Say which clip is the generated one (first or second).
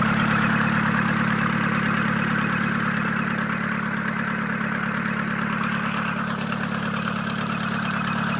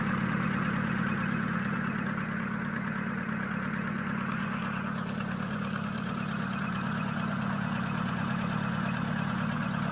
second